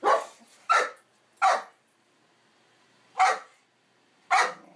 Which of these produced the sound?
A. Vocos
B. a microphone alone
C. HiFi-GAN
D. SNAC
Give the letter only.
B